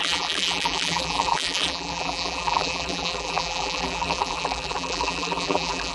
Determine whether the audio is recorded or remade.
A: remade